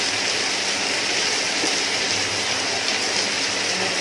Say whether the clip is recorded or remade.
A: recorded